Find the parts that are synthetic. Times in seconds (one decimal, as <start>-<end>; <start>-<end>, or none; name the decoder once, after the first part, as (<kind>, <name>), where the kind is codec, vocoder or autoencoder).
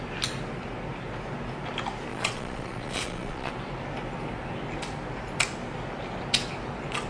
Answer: 2.1-3.5 (vocoder, Vocos)